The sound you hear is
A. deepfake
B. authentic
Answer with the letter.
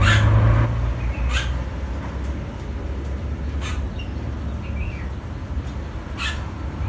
B